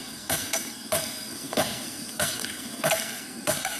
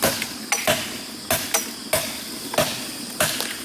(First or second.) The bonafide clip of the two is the second